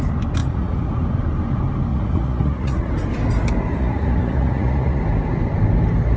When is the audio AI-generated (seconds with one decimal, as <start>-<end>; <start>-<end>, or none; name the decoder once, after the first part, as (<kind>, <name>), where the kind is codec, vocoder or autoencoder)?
0.4-0.9 (vocoder, Vocos); 1.9-2.9; 3.7-5.0